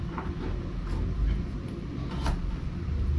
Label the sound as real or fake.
real